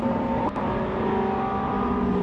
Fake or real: real